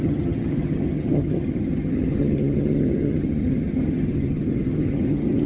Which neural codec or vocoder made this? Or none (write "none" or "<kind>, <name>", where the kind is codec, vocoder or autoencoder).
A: vocoder, HiFi-GAN